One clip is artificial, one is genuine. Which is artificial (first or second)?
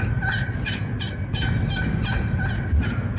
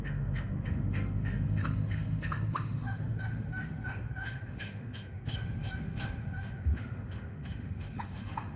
second